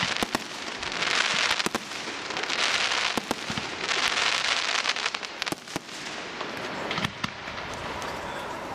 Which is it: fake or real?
real